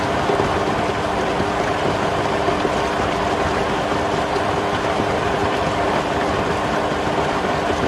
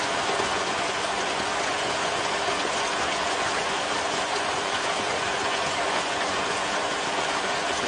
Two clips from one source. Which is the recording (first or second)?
first